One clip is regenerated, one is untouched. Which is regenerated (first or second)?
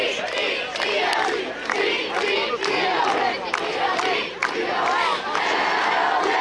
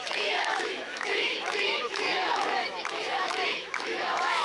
second